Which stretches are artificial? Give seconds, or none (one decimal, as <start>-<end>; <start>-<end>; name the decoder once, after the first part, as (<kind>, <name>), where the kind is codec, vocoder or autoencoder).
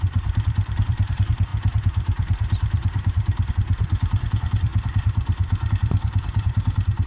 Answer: 0.0-7.1 (vocoder, BigVGAN v2)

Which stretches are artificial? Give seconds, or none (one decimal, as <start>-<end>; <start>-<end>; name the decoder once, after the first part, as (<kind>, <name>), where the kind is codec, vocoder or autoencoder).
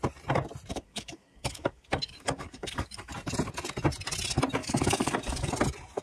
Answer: 0.7-3.1 (codec, DAC); 4.6-5.5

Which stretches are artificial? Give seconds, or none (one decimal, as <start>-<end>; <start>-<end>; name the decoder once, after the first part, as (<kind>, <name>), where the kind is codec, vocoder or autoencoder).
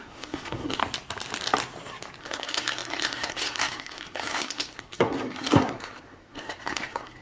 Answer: 0.0-0.8 (codec, SNAC); 2.2-7.2